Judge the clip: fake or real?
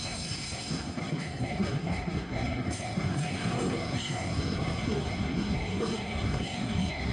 fake